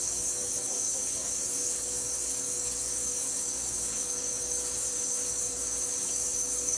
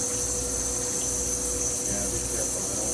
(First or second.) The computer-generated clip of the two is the first